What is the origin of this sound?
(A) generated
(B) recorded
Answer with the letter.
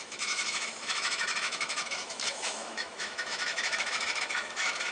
A